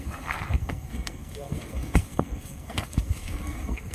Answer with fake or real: fake